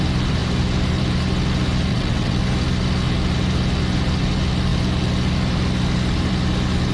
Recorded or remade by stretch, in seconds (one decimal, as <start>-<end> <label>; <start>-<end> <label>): 0.0-1.9 recorded; 1.9-2.4 remade; 2.4-6.9 recorded